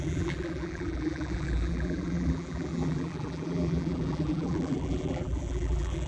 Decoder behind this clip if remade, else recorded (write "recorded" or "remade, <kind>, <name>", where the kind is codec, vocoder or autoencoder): remade, vocoder, BigVGAN v2